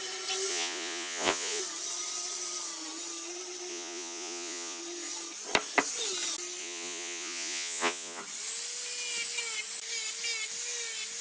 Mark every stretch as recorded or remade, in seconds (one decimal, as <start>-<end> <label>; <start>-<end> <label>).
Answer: 0.0-0.5 recorded; 0.5-1.6 remade; 1.6-3.7 recorded; 3.7-4.8 remade; 4.8-6.6 recorded; 6.6-8.2 remade; 8.2-11.2 recorded